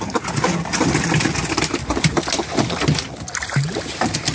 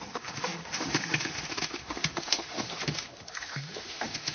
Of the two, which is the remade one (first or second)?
second